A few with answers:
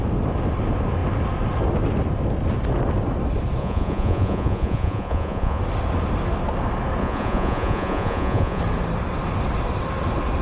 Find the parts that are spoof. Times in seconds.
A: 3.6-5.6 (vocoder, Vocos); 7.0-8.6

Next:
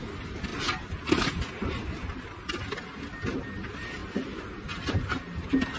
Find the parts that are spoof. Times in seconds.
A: none

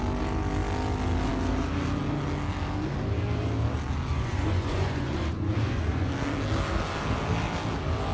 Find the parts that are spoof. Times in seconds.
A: 4.1-6.1 (vocoder, Vocos)